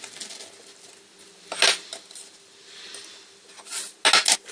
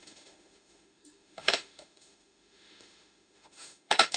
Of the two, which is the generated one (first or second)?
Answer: second